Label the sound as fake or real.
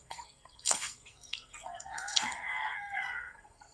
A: fake